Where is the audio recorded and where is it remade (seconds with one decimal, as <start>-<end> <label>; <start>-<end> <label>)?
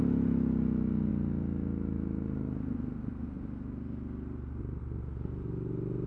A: 0.0-6.1 recorded